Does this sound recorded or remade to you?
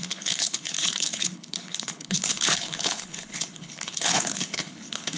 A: remade